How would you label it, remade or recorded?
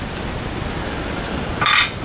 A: remade